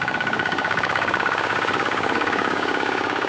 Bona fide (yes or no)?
no